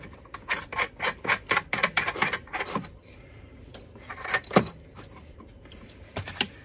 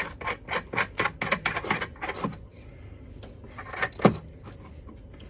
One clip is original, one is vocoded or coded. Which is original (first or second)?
second